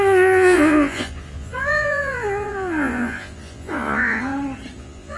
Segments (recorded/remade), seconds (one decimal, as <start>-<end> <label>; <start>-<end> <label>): 0.0-4.3 remade; 4.3-4.8 recorded; 4.8-5.2 remade